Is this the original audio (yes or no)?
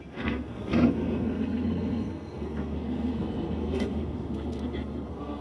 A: no